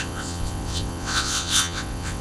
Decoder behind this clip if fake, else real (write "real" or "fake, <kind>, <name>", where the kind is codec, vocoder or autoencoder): fake, vocoder, WaveNeXt